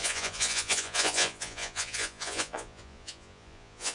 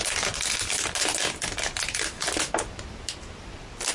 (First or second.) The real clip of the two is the second